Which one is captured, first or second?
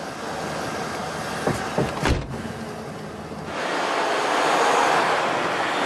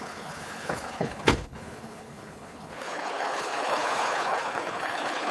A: first